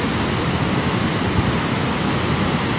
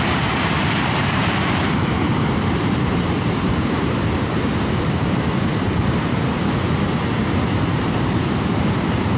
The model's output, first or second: second